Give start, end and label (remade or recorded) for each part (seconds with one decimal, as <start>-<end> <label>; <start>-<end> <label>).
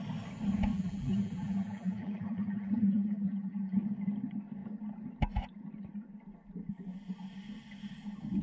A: 0.0-0.7 recorded; 0.7-3.8 remade; 3.8-8.4 recorded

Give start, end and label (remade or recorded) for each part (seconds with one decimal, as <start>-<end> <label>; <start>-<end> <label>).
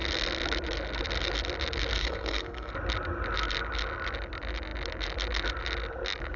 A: 0.0-2.0 recorded; 2.0-2.7 remade; 2.7-6.4 recorded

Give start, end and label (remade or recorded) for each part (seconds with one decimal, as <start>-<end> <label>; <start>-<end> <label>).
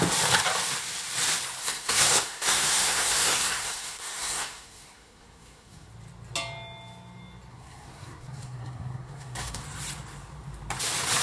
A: 0.0-1.6 recorded; 1.6-5.9 remade; 5.9-7.5 recorded; 7.5-9.6 remade; 9.6-11.2 recorded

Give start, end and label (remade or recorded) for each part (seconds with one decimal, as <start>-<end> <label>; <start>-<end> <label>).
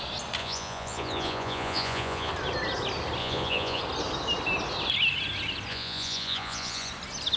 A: 0.0-0.4 recorded; 0.4-2.3 remade; 2.3-3.2 recorded; 3.2-3.8 remade; 3.8-5.7 recorded; 5.7-6.9 remade; 6.9-7.4 recorded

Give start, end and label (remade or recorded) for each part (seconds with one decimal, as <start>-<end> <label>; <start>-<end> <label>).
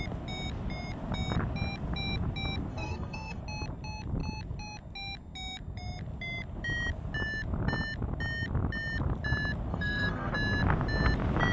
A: 0.0-2.7 recorded; 2.7-3.4 remade; 3.4-9.7 recorded; 9.7-10.3 remade; 10.3-11.5 recorded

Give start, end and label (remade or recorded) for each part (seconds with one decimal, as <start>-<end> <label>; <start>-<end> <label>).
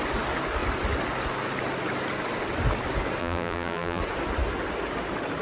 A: 0.0-3.2 recorded; 3.2-4.0 remade; 4.0-5.4 recorded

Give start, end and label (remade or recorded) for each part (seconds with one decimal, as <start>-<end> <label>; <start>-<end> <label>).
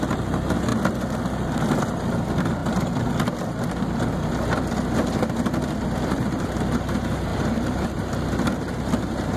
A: 0.0-9.4 recorded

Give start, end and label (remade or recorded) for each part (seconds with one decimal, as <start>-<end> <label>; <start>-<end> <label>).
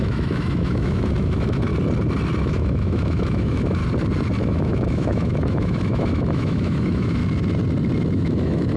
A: 0.0-1.7 remade; 1.7-2.4 recorded; 2.4-3.8 remade; 3.8-4.4 recorded; 4.4-7.2 remade; 7.2-8.1 recorded; 8.1-8.8 remade